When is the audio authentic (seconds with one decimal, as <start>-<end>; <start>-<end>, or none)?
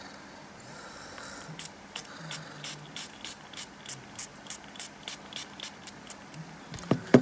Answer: 0.0-4.3; 5.0-7.2